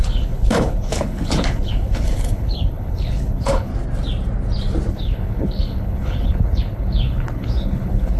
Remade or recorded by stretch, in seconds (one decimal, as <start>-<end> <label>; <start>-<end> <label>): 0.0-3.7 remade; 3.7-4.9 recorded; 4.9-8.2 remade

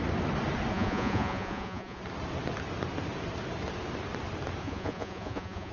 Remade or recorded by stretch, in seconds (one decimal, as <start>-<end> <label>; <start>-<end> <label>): 0.0-0.7 recorded; 0.7-2.0 remade; 2.0-4.6 recorded; 4.6-5.7 remade

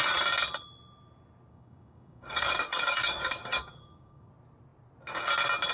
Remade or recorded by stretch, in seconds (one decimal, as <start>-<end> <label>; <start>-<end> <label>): 0.0-1.5 recorded; 1.5-4.3 remade; 4.3-5.7 recorded

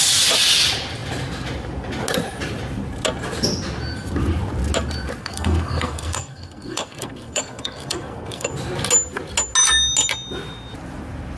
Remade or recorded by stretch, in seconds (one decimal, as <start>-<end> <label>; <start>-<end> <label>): 0.0-5.2 recorded; 5.2-8.5 remade; 8.5-11.4 recorded